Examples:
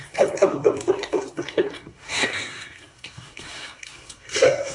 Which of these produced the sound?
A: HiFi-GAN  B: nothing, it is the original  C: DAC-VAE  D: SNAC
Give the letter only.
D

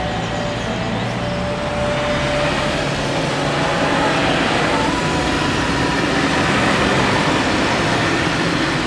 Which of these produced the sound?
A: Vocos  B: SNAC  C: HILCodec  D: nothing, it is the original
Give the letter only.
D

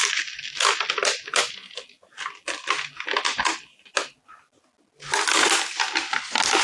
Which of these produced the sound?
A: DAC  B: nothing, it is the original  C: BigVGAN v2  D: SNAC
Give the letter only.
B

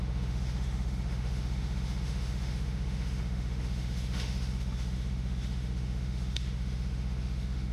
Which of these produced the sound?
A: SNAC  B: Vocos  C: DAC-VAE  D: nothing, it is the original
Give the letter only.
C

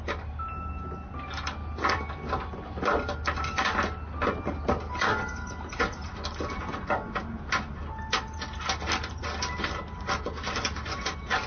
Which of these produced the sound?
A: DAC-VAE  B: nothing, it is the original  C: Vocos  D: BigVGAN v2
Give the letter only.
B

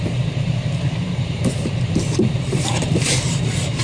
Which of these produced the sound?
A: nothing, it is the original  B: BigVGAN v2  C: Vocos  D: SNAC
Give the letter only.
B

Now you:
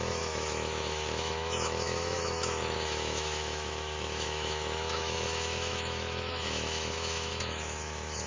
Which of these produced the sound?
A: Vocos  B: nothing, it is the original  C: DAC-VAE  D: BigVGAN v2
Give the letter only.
C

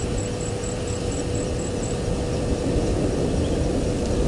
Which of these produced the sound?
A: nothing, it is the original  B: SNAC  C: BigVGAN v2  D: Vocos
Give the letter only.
C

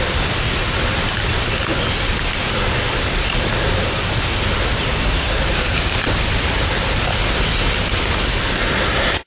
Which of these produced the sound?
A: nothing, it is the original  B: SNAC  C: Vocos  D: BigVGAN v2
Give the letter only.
A